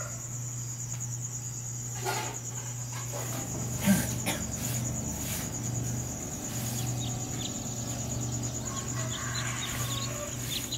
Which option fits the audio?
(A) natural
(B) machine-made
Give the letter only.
A